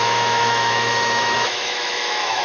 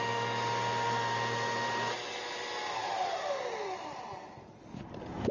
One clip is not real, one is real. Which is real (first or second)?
second